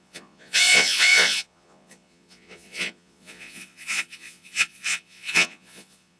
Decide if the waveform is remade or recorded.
remade